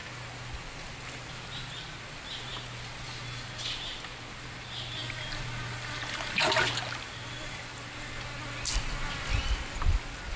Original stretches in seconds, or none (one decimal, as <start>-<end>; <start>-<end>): 0.0-10.4